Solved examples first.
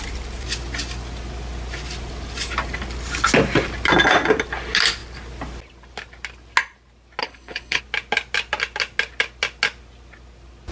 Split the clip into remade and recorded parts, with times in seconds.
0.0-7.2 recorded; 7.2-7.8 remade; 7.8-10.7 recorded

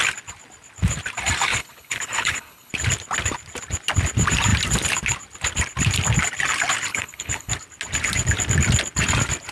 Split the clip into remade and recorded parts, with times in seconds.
0.0-1.5 recorded; 1.5-2.7 remade; 2.7-6.9 recorded; 6.9-7.5 remade; 7.5-9.5 recorded

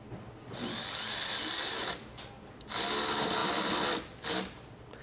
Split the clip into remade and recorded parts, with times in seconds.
0.0-5.0 recorded

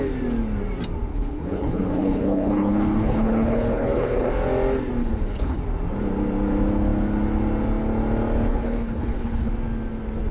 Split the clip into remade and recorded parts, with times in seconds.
0.0-1.1 recorded; 1.1-4.3 remade; 4.3-5.0 recorded; 5.0-5.6 remade; 5.6-8.5 recorded; 8.5-9.5 remade; 9.5-10.3 recorded

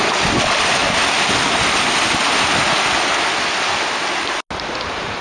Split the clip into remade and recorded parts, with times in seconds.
0.0-5.2 recorded